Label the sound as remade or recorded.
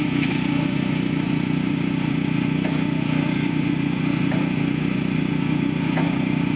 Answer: remade